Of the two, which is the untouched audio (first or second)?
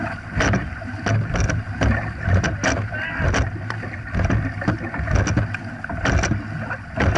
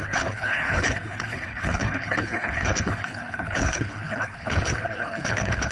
first